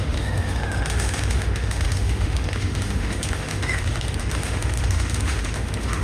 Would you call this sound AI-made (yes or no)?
yes